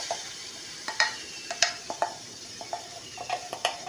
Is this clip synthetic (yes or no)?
yes